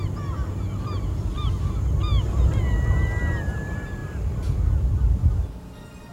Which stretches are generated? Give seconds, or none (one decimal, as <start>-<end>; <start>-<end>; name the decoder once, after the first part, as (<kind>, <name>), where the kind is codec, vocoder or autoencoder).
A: none